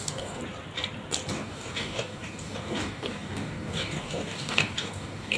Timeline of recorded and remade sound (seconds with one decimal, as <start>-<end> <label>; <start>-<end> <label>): 0.0-0.4 remade; 0.4-1.3 recorded; 1.3-5.4 remade